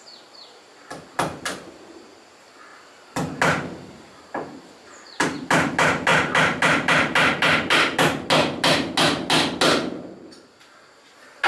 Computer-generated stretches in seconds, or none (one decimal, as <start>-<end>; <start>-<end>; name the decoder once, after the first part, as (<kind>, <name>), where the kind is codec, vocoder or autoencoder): none